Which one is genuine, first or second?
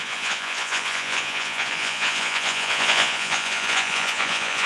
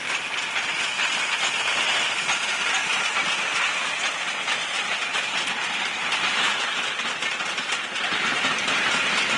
second